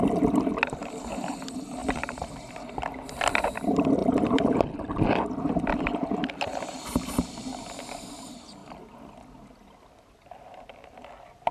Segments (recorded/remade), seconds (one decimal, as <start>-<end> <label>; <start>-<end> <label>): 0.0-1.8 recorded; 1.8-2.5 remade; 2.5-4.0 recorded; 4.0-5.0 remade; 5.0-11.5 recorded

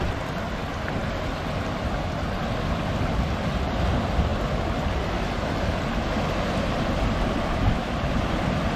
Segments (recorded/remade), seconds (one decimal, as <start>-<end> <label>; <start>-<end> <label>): 0.0-8.8 recorded

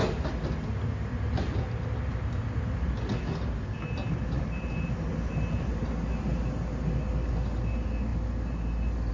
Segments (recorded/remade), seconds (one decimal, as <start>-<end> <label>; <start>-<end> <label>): 0.0-9.1 recorded

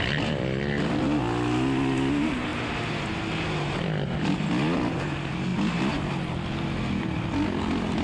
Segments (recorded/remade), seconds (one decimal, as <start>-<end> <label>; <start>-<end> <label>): 0.0-8.0 recorded

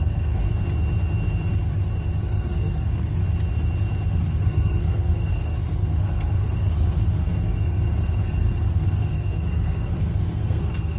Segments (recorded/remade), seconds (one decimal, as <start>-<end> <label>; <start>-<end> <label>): 0.0-0.4 remade; 0.4-2.2 recorded; 2.2-3.2 remade; 3.2-4.1 recorded; 4.1-11.0 remade

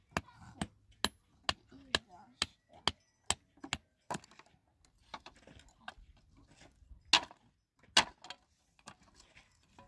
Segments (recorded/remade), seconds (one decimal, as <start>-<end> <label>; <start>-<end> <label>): 0.0-9.9 recorded

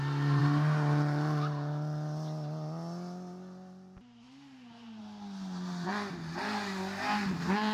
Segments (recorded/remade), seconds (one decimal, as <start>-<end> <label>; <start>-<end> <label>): 0.0-7.7 recorded